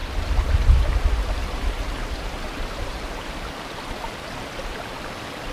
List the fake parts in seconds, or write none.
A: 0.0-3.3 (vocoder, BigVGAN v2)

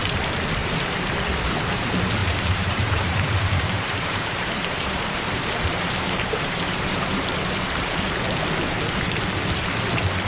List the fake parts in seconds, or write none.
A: 0.6-1.8 (vocoder, BigVGAN v2); 2.2-7.3

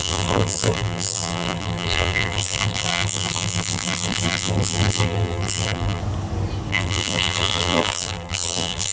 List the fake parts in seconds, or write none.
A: 0.0-6.0 (vocoder, BigVGAN v2); 6.7-8.9